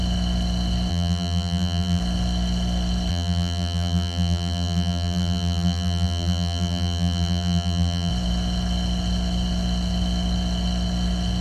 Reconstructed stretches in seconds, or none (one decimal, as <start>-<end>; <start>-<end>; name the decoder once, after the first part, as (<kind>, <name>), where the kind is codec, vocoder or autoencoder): 0.9-2.0 (vocoder, BigVGAN v2); 3.1-8.1